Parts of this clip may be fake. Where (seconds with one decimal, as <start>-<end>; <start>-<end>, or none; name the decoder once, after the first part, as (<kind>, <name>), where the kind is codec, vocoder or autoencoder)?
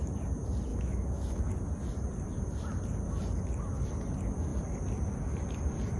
0.7-1.5 (autoencoder, DAC-VAE)